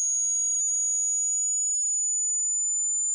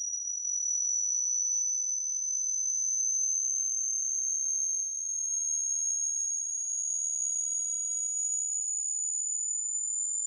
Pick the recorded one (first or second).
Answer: first